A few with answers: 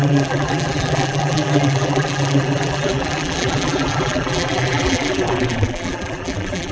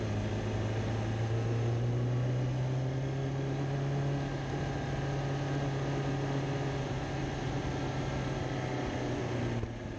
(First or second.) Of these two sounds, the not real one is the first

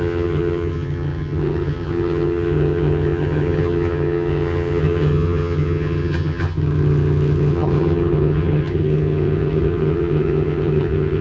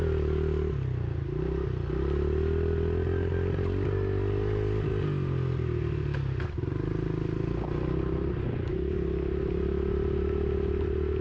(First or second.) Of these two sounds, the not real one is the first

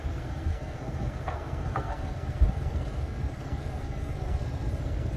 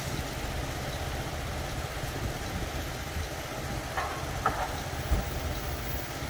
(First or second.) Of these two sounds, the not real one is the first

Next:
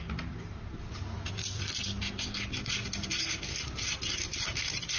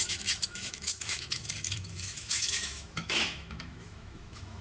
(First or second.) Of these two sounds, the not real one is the second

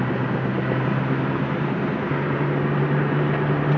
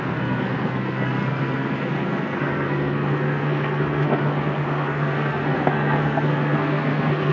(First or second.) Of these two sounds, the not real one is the second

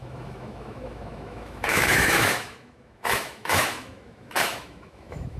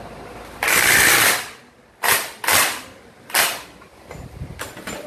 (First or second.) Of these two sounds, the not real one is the first